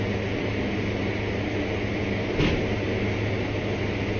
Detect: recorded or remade recorded